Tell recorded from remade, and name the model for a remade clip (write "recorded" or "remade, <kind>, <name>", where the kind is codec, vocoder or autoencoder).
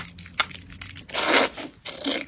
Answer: recorded